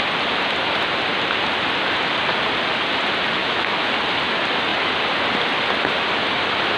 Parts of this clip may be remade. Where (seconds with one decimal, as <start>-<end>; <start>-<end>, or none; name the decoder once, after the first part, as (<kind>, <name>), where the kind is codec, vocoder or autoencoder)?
3.4-3.9 (autoencoder, DAC-VAE)